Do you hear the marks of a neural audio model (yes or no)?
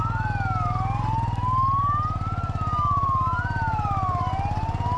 no